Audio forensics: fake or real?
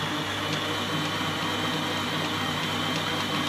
real